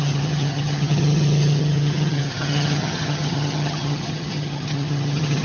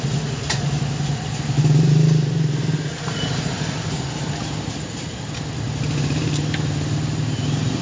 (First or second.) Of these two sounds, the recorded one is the second